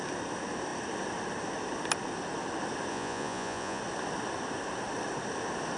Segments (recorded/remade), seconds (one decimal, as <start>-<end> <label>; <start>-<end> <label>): 0.0-2.9 recorded; 2.9-3.8 remade; 3.8-5.8 recorded